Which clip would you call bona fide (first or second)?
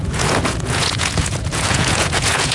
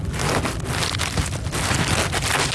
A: second